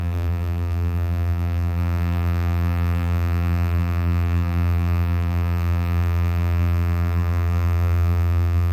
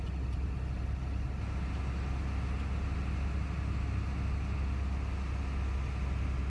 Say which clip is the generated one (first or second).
first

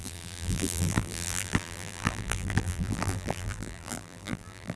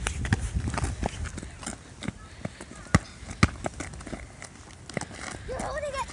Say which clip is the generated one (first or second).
first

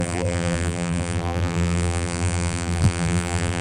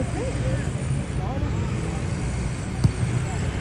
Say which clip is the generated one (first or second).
first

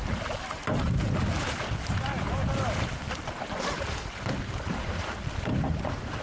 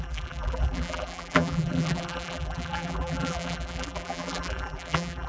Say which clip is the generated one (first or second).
second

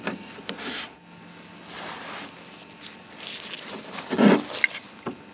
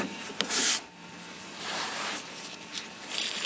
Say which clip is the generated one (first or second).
second